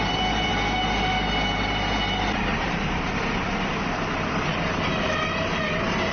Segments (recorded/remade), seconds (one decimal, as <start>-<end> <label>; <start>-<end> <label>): 0.0-0.5 remade; 0.5-1.0 recorded; 1.0-6.1 remade